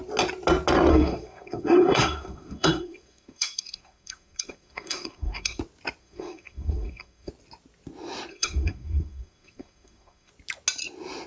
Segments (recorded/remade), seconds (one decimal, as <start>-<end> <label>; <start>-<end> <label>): 0.0-0.9 recorded; 0.9-5.6 remade; 5.6-6.0 recorded; 6.0-7.3 remade; 7.3-8.3 recorded; 8.3-10.3 remade; 10.3-11.3 recorded